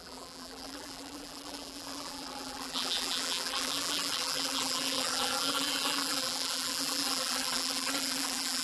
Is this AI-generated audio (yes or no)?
yes